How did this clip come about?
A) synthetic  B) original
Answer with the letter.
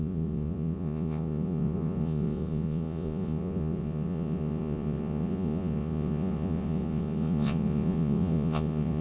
A